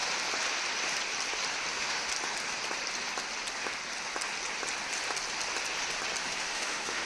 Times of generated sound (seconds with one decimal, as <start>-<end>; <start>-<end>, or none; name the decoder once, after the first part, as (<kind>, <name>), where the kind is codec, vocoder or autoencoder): 1.7-2.1 (autoencoder, DAC-VAE); 6.4-7.1